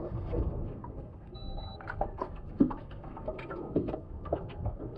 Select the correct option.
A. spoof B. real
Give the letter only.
A